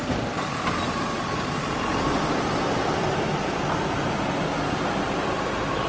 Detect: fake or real fake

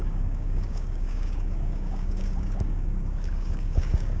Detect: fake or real fake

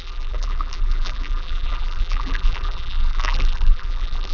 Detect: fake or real fake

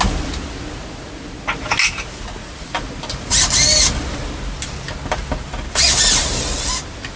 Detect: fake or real real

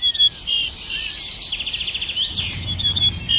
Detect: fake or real real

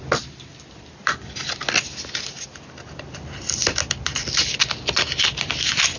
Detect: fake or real real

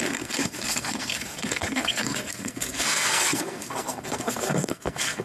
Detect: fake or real fake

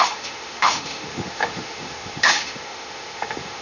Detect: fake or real fake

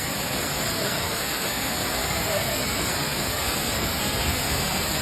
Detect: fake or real fake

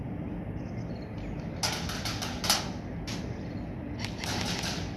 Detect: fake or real real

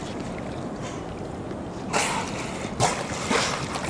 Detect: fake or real real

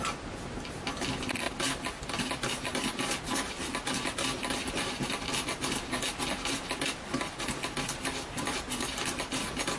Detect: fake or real real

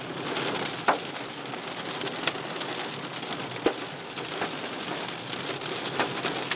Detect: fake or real real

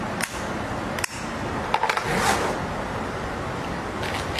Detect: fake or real real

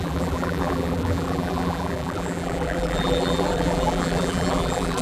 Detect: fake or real fake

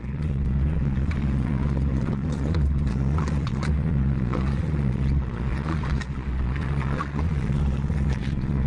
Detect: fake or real fake